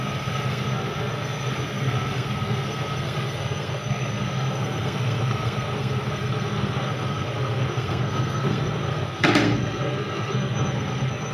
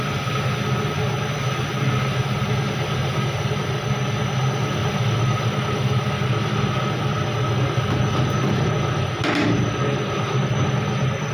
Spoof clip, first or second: first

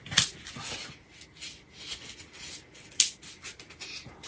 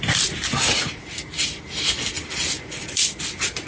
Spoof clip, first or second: second